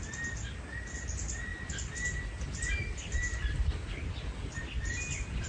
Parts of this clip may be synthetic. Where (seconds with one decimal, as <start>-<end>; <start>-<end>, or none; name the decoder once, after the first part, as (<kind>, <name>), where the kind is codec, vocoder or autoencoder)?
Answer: none